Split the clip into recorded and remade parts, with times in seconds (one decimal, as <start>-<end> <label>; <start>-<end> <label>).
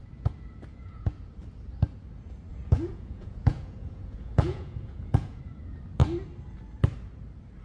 0.0-0.7 recorded; 0.7-1.2 remade; 1.2-2.5 recorded; 2.5-5.4 remade; 5.4-7.6 recorded